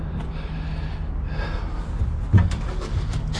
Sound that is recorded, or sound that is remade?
recorded